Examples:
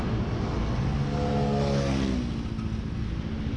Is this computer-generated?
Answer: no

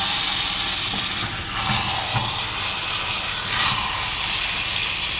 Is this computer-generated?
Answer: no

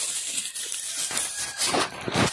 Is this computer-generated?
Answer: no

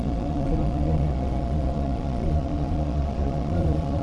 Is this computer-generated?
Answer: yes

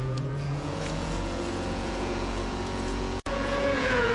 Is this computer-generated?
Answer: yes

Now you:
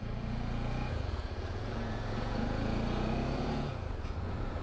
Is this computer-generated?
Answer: yes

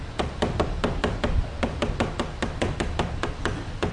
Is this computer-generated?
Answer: no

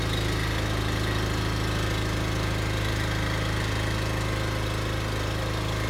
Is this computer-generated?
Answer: no